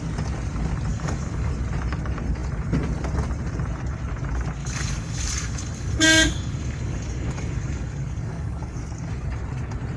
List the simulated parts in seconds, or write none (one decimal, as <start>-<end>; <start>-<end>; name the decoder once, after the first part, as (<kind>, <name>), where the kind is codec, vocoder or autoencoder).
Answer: 0.9-1.5 (codec, DAC); 4.6-8.8